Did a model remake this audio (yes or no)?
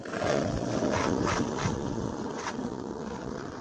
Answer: yes